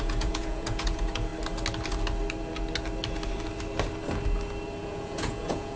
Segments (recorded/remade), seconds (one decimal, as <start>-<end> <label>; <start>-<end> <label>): 0.0-1.3 remade; 1.3-4.8 recorded; 4.8-5.8 remade